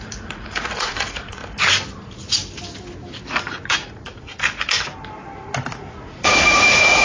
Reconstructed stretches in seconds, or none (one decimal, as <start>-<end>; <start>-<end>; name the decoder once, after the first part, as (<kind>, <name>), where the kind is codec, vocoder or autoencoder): 0.0-1.4 (vocoder, Vocos); 2.0-2.4; 3.5-4.3; 5.9-7.0